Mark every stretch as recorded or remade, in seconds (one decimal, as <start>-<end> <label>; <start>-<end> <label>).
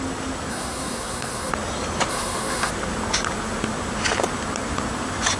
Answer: 0.0-0.5 recorded; 0.5-1.5 remade; 1.5-2.1 recorded; 2.1-2.7 remade; 2.7-5.4 recorded